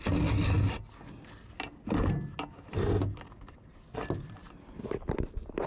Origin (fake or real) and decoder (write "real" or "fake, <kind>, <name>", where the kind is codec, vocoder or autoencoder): real